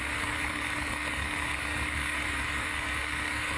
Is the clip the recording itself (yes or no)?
no